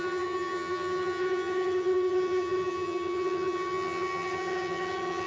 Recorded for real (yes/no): no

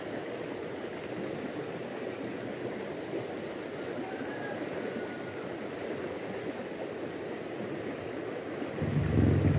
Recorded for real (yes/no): yes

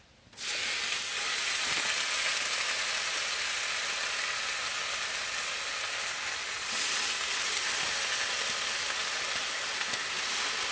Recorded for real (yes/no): yes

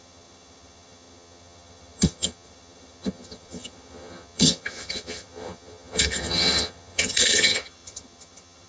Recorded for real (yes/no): no